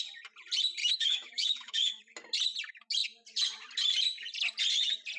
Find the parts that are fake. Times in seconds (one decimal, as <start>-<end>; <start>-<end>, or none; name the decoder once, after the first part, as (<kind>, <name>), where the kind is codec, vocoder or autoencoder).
0.8-2.0 (autoencoder, DAC-VAE)